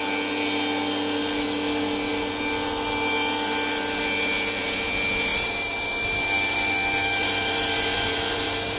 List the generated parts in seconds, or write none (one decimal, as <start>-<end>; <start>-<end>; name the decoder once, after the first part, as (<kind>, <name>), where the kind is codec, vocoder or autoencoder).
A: 5.3-8.8 (vocoder, BigVGAN v2)